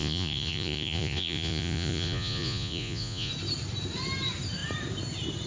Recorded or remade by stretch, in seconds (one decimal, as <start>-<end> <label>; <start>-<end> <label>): 0.0-3.3 remade; 3.3-5.5 recorded